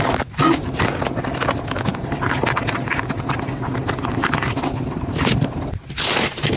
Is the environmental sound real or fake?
real